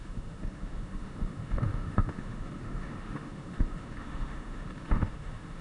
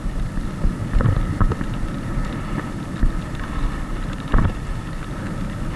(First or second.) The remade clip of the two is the first